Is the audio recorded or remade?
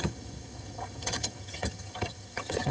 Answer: remade